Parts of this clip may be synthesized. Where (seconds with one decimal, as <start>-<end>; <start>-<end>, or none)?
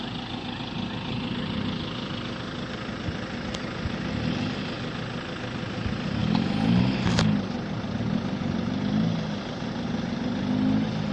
none